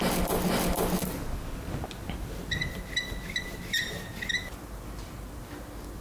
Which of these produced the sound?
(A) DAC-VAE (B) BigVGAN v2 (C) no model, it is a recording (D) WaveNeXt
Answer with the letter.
C